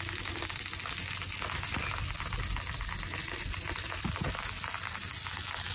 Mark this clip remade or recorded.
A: recorded